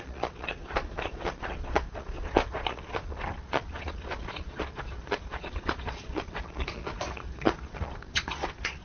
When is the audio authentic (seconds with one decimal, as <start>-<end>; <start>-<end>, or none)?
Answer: none